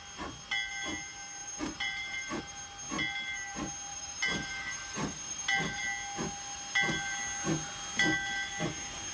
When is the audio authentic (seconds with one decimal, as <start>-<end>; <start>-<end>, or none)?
0.0-1.4; 2.4-3.9; 5.8-9.1